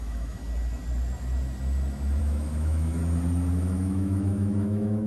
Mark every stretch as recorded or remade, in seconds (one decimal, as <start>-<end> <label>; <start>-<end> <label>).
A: 0.0-0.4 remade; 0.4-2.2 recorded; 2.2-3.0 remade; 3.0-3.5 recorded; 3.5-5.1 remade